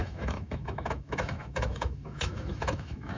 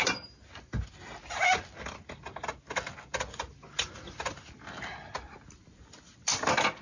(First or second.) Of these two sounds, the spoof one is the first